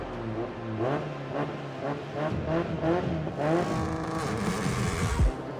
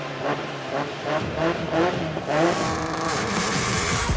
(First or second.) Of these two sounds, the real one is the first